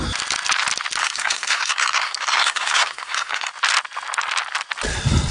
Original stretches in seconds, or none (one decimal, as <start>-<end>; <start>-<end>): 0.0-1.0; 3.5-5.3